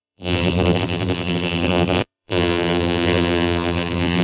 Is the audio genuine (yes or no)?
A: no